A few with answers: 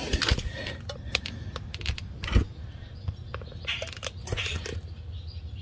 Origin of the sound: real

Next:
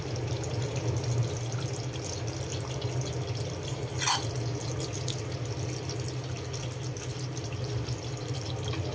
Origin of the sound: real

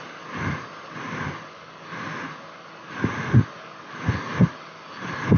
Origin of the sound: real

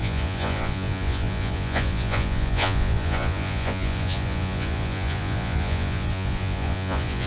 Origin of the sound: fake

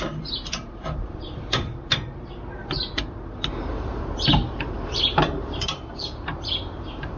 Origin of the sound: fake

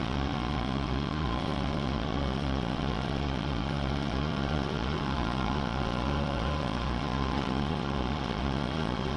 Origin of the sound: fake